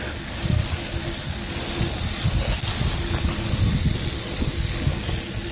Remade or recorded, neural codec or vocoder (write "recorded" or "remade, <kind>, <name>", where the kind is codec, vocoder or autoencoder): recorded